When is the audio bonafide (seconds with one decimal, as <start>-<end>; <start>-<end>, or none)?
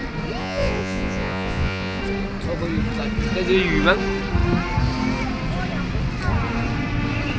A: 0.0-0.4; 2.0-7.4